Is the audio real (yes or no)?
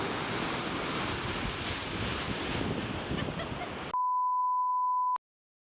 yes